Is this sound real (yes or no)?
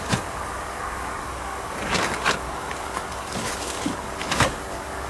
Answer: no